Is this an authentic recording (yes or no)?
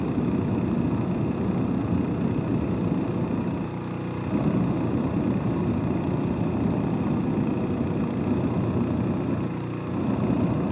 yes